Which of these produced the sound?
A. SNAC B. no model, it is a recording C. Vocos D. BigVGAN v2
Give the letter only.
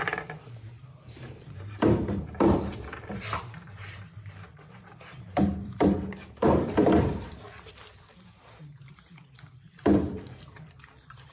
D